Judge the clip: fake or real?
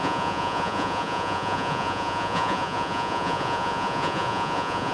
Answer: fake